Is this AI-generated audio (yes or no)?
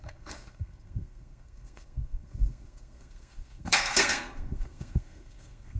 yes